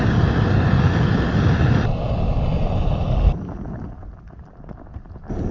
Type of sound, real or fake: real